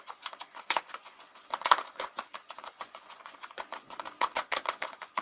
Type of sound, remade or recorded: remade